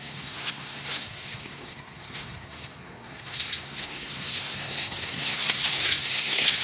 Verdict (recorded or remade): remade